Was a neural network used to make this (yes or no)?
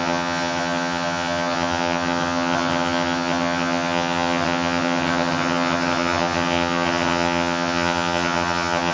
yes